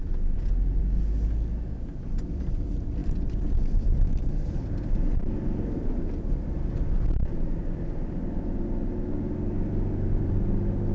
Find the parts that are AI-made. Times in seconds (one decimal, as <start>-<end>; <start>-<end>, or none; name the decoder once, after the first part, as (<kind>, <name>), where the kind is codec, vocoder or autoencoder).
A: 3.0-6.8 (vocoder, BigVGAN v2)